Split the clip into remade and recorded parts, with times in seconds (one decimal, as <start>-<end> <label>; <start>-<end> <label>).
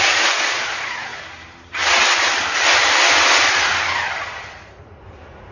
0.0-1.1 remade; 1.1-4.4 recorded; 4.4-5.5 remade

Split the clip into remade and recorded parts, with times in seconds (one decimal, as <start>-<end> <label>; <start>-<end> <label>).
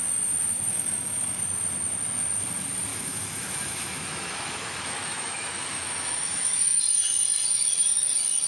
0.0-0.7 recorded; 0.7-1.4 remade; 1.4-2.9 recorded; 2.9-6.8 remade; 6.8-8.5 recorded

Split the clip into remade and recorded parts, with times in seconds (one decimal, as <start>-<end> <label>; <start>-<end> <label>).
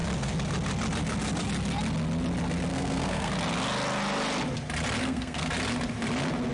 0.0-2.7 recorded; 2.7-3.3 remade; 3.3-5.0 recorded; 5.0-5.5 remade; 5.5-6.5 recorded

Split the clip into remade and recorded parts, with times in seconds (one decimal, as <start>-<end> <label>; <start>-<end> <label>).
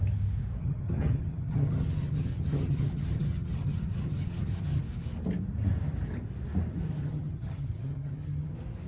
0.0-0.6 recorded; 0.6-4.8 remade; 4.8-7.0 recorded; 7.0-8.5 remade; 8.5-8.9 recorded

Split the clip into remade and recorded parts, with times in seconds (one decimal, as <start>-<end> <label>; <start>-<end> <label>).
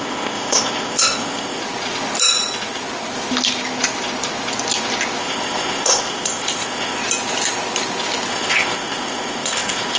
0.0-1.6 remade; 1.6-5.2 recorded; 5.2-7.0 remade; 7.0-8.3 recorded; 8.3-10.0 remade